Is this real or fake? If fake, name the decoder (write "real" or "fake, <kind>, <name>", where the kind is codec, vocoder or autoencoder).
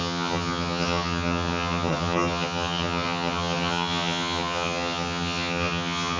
fake, vocoder, HiFi-GAN